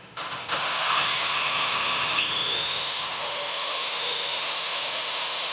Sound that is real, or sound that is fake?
fake